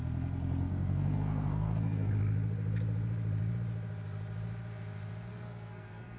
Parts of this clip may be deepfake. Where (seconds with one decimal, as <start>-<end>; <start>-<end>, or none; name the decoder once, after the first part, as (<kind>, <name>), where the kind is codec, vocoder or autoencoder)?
0.7-2.1 (codec, SNAC); 5.3-6.2